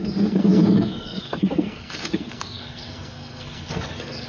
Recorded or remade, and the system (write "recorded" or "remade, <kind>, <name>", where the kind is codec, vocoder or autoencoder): remade, codec, SNAC